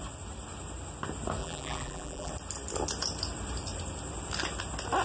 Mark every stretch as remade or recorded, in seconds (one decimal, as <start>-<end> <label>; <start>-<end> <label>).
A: 0.0-1.4 recorded; 1.4-2.3 remade; 2.3-5.0 recorded